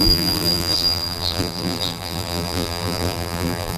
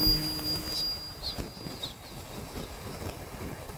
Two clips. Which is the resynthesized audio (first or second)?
first